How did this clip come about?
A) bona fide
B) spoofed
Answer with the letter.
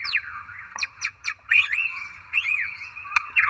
B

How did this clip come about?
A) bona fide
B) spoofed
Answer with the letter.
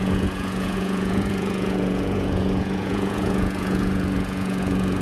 B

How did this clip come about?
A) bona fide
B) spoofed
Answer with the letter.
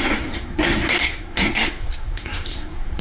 B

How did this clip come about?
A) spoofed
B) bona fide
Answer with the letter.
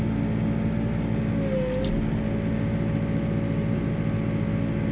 B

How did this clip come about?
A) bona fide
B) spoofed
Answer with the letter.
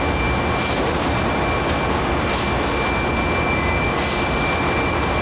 A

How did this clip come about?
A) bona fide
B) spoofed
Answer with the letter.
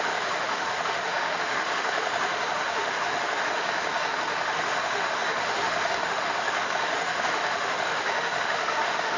B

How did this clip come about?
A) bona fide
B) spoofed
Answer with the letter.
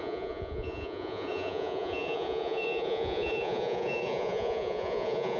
B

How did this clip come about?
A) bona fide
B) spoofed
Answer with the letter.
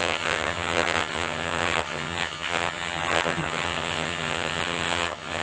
B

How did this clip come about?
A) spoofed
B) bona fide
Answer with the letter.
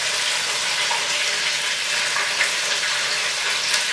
B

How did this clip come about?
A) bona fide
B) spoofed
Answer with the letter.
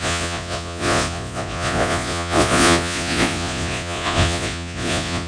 B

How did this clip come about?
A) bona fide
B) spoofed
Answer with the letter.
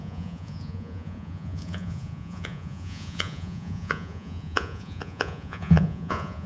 B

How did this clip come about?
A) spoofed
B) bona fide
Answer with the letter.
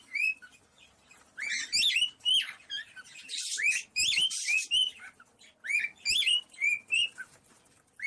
B